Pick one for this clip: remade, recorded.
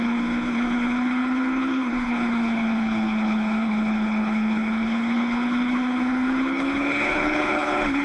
remade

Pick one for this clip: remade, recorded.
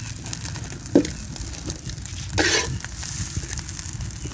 recorded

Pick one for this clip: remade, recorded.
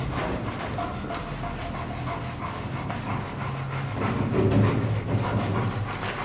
recorded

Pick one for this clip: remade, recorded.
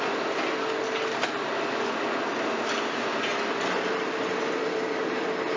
recorded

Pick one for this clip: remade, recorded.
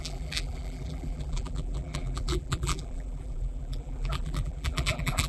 remade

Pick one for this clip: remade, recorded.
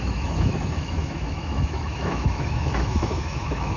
remade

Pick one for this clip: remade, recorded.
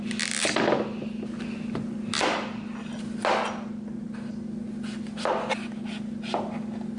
recorded